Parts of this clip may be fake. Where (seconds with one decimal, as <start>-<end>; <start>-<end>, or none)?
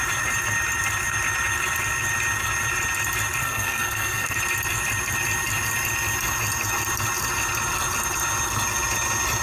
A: 3.4-4.4